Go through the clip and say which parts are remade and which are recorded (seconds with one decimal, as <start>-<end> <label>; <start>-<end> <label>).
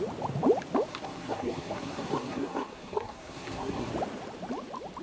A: 0.0-0.9 recorded; 0.9-3.9 remade; 3.9-5.0 recorded